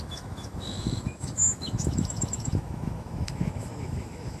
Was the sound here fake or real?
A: fake